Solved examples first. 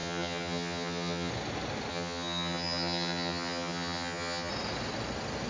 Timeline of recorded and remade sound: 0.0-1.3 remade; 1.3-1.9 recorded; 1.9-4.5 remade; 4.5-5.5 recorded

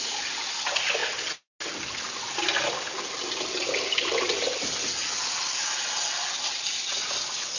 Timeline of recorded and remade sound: 0.0-7.6 recorded

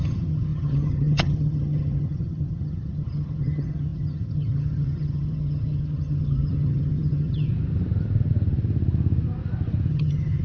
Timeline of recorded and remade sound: 0.0-7.5 remade; 7.5-9.9 recorded; 9.9-10.4 remade

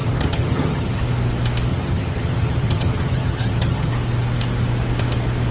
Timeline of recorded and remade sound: 0.0-1.0 remade; 1.0-1.7 recorded; 1.7-3.9 remade; 3.9-5.5 recorded

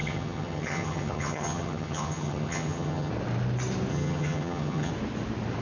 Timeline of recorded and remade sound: 0.0-3.1 remade; 3.1-3.9 recorded; 3.9-4.9 remade; 4.9-5.6 recorded

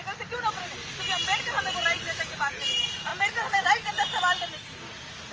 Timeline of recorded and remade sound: 0.0-5.3 recorded

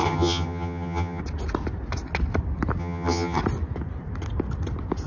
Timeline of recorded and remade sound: 0.0-1.2 remade; 1.2-2.8 recorded; 2.8-3.4 remade; 3.4-5.1 recorded

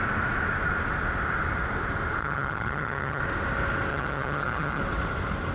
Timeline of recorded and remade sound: 0.0-2.2 recorded; 2.2-3.2 remade; 3.2-3.9 recorded; 3.9-4.8 remade; 4.8-5.5 recorded